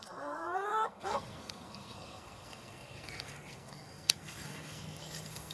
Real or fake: fake